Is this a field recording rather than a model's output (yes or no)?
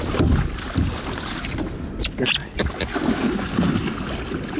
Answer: yes